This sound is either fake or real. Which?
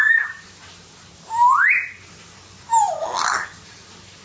real